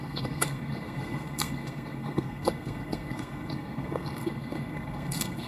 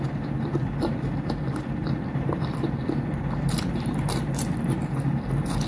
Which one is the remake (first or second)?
first